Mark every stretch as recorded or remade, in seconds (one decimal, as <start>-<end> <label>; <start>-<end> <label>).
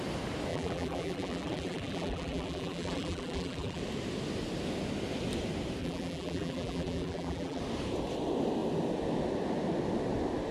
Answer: 0.0-0.5 recorded; 0.5-3.8 remade; 3.8-5.8 recorded; 5.8-7.6 remade; 7.6-10.5 recorded